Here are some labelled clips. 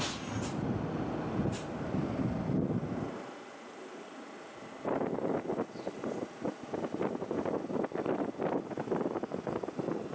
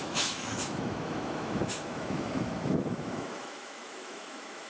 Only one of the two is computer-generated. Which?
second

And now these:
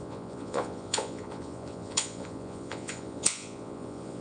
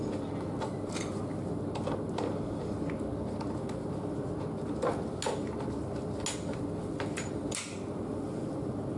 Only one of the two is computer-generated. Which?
first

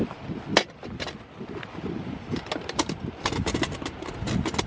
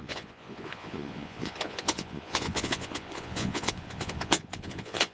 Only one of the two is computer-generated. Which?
second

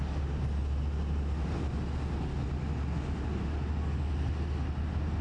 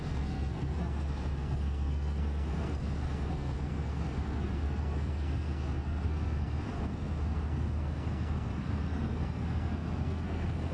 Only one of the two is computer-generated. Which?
second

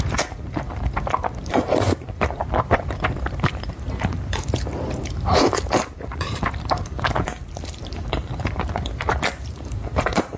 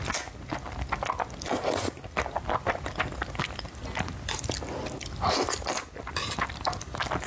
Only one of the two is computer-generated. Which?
first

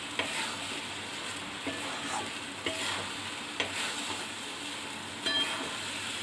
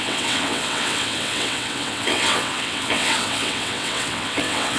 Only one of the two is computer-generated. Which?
second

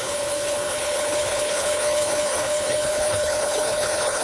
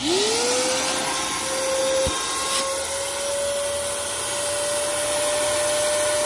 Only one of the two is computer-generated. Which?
first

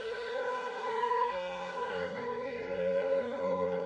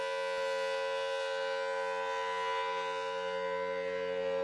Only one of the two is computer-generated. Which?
first